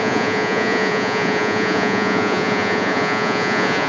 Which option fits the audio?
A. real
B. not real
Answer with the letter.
B